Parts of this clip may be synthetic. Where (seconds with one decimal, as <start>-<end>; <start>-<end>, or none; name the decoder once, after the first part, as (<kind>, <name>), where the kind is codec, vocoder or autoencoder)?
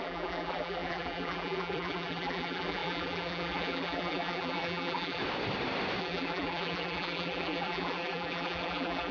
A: 0.0-5.2 (vocoder, BigVGAN v2); 6.0-9.1